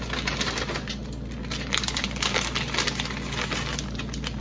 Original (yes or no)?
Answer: yes